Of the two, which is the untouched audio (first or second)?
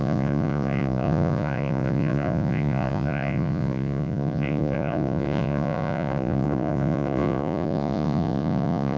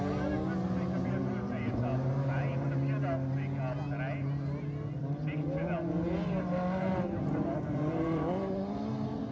second